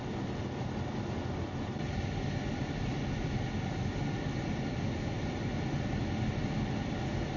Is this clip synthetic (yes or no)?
no